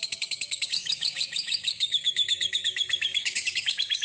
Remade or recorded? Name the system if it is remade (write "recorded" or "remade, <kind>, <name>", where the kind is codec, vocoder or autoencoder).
remade, codec, DAC